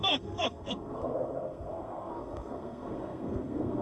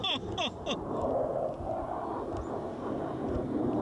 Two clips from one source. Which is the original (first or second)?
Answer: second